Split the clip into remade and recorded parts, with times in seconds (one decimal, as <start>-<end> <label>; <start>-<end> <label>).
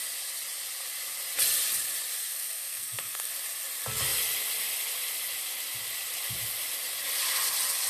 0.0-2.2 recorded; 2.2-3.3 remade; 3.3-7.9 recorded